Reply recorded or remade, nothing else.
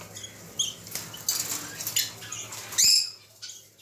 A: recorded